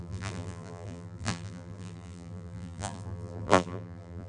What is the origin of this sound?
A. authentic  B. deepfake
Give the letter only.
B